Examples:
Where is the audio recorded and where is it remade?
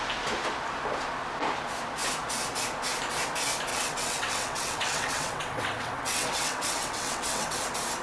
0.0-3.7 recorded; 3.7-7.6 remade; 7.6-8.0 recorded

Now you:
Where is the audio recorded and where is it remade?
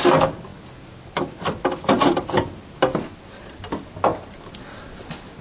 0.0-5.4 recorded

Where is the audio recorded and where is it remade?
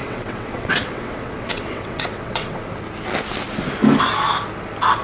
0.0-2.6 remade; 2.6-5.0 recorded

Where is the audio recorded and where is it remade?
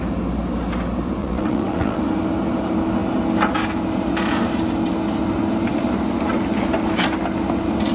0.0-1.2 recorded; 1.2-2.0 remade; 2.0-7.9 recorded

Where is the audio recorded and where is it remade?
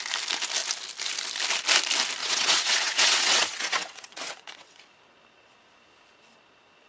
0.0-2.2 recorded; 2.2-4.8 remade; 4.8-6.9 recorded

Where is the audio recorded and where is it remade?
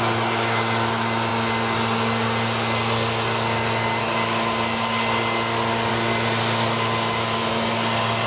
0.0-8.3 recorded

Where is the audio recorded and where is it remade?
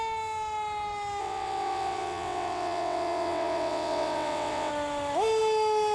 0.0-1.2 recorded; 1.2-4.7 remade; 4.7-5.9 recorded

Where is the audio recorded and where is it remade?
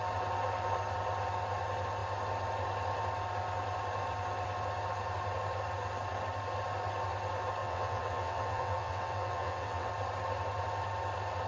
0.0-7.6 recorded; 7.6-9.9 remade; 9.9-11.5 recorded